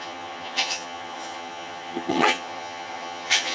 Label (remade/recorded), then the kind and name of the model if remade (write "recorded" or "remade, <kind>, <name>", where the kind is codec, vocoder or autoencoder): remade, vocoder, HiFi-GAN